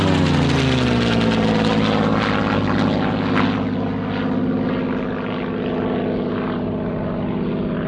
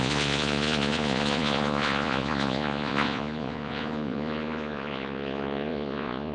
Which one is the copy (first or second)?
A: second